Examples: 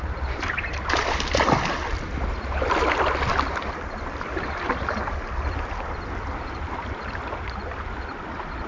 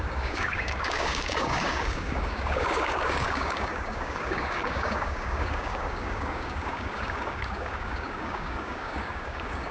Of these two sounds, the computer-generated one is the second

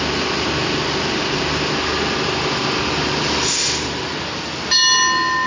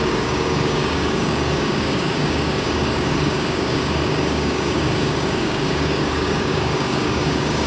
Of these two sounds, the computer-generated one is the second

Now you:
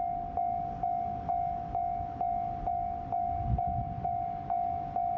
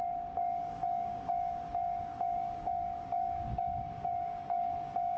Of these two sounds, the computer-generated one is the second